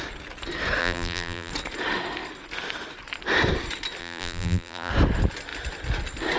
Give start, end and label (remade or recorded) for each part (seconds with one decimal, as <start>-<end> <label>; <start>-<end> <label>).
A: 0.0-0.8 recorded; 0.8-1.5 remade; 1.5-4.0 recorded; 4.0-4.9 remade; 4.9-6.4 recorded

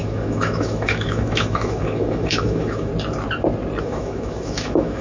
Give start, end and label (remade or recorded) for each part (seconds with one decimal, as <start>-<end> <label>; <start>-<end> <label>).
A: 0.0-2.9 remade; 2.9-3.8 recorded; 3.8-5.0 remade

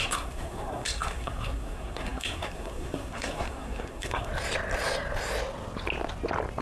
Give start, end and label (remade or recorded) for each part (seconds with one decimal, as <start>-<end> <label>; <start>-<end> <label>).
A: 0.0-4.3 remade; 4.3-6.6 recorded

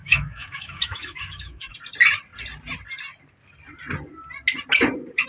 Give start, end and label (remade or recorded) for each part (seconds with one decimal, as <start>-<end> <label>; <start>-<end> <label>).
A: 0.0-1.7 remade; 1.7-5.3 recorded

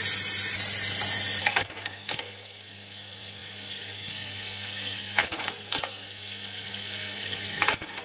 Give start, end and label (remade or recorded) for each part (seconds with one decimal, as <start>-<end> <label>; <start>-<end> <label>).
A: 0.0-1.4 recorded; 1.4-8.0 remade